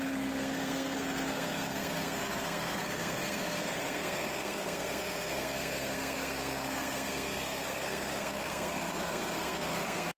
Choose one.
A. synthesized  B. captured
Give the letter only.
A